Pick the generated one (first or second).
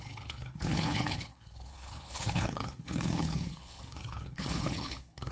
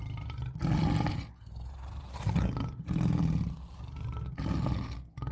first